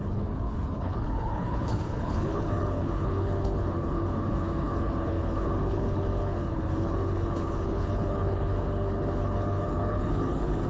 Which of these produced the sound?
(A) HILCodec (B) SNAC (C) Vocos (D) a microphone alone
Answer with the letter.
A